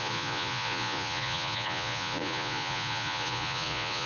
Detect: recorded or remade remade